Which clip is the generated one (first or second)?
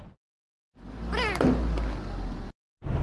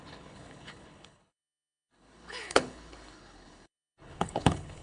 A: second